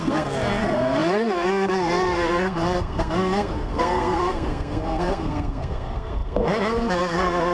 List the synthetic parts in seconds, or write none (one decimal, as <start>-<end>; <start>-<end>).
0.0-7.5